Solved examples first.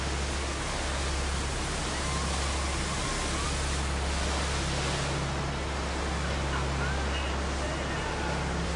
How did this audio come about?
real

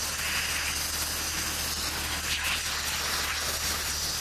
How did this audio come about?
real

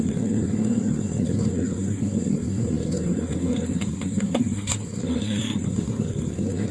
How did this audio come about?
fake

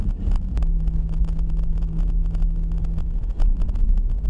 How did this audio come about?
real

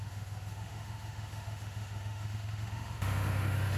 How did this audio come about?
fake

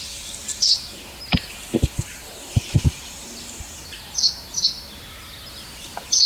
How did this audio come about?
real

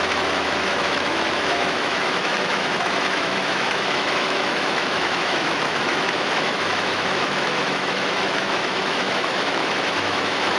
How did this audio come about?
fake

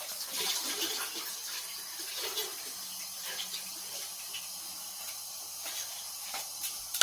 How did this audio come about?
fake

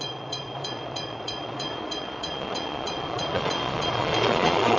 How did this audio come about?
fake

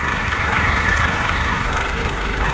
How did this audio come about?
fake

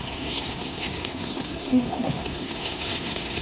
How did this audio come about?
fake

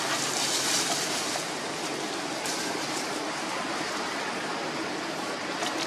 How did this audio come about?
real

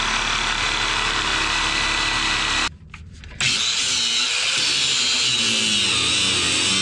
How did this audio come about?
real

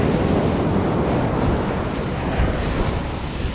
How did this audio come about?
real